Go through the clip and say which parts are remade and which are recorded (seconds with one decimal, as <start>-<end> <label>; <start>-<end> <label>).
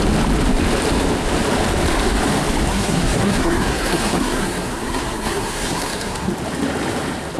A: 0.0-2.7 recorded; 2.7-6.3 remade; 6.3-7.4 recorded